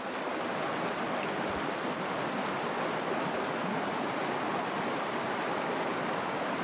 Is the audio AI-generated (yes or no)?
no